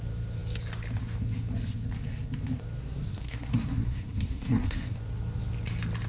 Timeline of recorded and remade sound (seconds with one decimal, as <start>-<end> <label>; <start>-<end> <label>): 0.0-2.8 recorded; 2.8-5.0 remade; 5.0-6.1 recorded